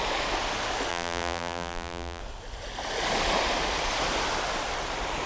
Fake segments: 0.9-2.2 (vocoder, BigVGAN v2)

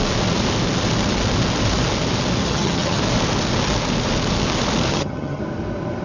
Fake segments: 2.4-3.0 (vocoder, HiFi-GAN); 4.9-5.4